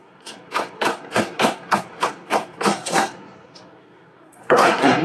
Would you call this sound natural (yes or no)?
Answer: no